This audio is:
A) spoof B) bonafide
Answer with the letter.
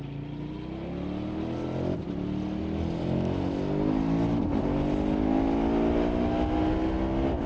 B